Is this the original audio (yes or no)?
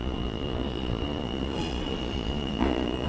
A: no